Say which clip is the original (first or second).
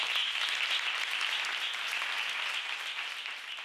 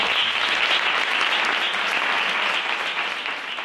second